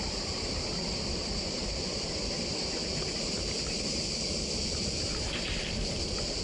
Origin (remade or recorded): remade